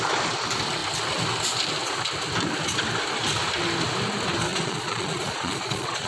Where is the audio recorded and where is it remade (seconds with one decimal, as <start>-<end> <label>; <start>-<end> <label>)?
0.0-4.5 recorded; 4.5-6.1 remade